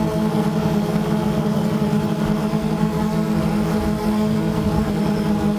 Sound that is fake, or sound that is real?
fake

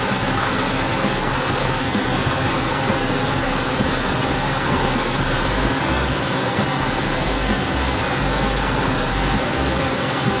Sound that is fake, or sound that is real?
fake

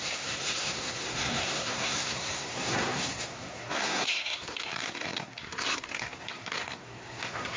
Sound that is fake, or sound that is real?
fake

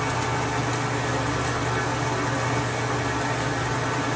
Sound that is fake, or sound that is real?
real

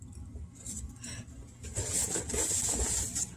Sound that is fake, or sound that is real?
real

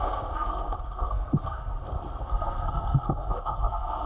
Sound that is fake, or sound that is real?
fake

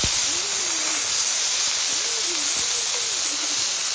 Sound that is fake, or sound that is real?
real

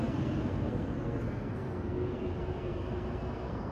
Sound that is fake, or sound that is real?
fake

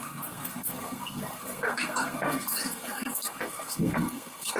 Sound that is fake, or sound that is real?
fake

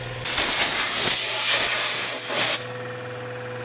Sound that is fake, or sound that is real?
real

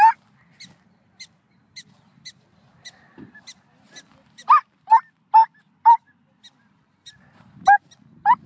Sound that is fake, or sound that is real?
real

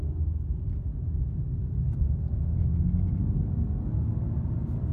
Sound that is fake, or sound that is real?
real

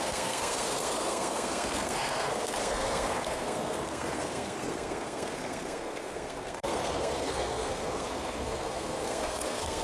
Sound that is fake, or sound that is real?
fake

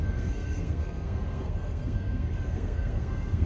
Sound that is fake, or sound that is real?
fake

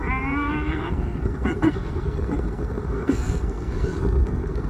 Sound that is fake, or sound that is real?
fake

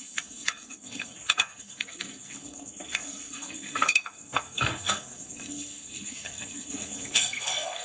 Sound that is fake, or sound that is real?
fake